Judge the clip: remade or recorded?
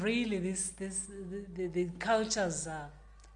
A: recorded